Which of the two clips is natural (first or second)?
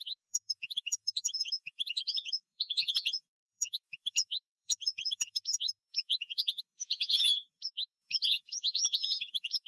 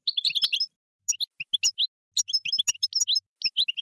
second